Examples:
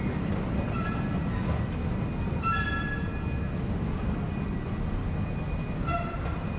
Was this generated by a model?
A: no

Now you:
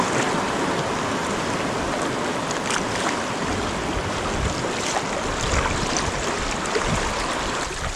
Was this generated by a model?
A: no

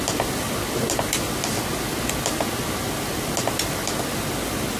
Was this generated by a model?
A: no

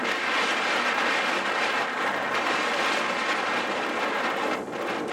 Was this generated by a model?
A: no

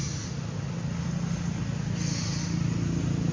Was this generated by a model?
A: no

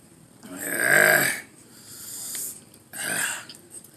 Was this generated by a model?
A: yes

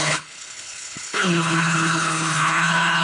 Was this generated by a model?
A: yes